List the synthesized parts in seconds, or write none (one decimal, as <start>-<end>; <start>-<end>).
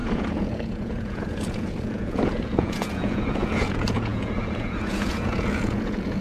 0.0-6.2